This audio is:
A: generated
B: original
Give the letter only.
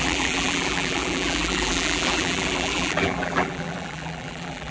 A